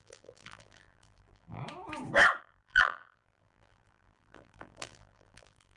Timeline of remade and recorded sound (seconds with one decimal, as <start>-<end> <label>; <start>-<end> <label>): 0.0-1.6 remade; 1.6-2.4 recorded; 2.4-5.8 remade